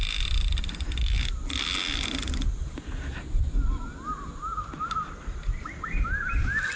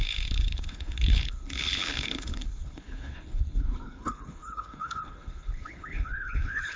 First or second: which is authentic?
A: first